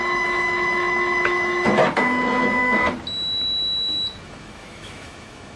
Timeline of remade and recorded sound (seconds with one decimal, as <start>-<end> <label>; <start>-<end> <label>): 0.0-1.8 remade; 1.8-4.2 recorded; 4.2-5.6 remade